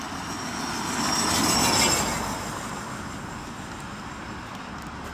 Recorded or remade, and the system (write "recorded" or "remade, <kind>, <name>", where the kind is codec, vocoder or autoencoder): recorded